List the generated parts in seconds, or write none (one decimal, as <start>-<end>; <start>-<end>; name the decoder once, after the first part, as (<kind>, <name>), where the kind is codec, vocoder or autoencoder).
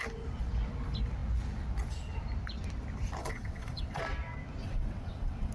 3.2-4.0 (vocoder, WaveNeXt); 4.6-5.5